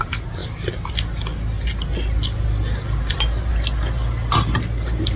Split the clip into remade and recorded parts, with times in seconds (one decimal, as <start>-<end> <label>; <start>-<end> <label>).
0.0-5.2 recorded